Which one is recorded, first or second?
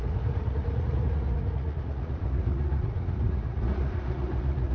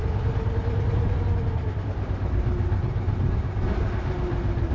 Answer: second